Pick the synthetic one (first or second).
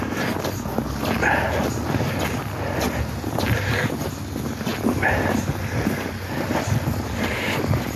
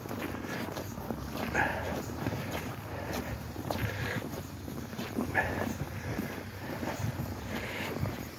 second